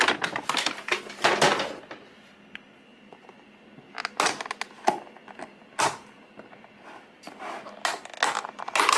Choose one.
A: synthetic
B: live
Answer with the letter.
B